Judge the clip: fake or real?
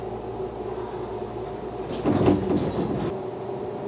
real